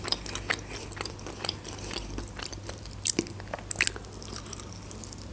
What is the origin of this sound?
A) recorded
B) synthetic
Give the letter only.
A